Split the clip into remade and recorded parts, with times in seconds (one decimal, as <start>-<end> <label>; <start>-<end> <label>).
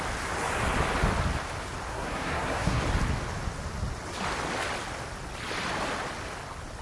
0.0-1.9 recorded; 1.9-2.8 remade; 2.8-6.8 recorded